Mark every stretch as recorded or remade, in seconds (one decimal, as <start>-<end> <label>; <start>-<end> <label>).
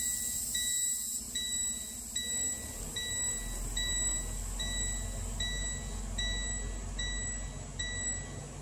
0.0-8.6 recorded